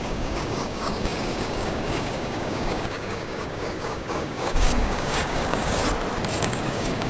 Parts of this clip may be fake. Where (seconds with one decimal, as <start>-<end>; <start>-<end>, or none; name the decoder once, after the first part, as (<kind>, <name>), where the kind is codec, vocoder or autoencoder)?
0.0-5.8 (codec, DAC); 6.4-7.1